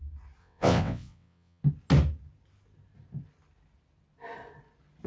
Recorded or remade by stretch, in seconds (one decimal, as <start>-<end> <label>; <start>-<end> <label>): 0.0-0.4 recorded; 0.4-1.6 remade; 1.6-5.1 recorded